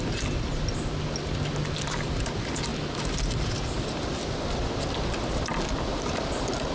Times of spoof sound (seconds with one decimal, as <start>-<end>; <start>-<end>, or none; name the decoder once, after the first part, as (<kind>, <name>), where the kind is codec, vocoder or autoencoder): none